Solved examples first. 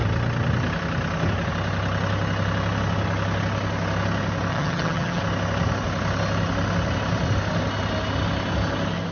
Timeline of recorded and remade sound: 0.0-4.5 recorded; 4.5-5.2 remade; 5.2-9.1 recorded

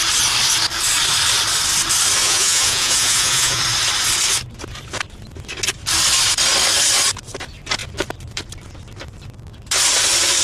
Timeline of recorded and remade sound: 0.0-2.2 recorded; 2.2-3.6 remade; 3.6-10.4 recorded